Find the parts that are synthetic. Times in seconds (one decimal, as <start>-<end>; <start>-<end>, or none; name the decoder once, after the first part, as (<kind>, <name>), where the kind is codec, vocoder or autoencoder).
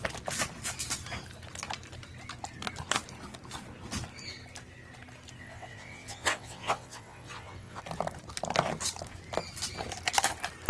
5.4-7.8 (vocoder, WaveNeXt)